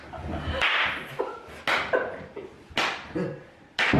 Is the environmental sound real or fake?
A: real